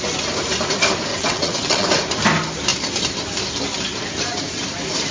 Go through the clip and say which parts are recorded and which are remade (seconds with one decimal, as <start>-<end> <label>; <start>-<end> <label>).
0.0-1.1 recorded; 1.1-1.9 remade; 1.9-5.1 recorded